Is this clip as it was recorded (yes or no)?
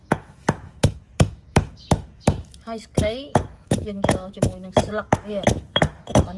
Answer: no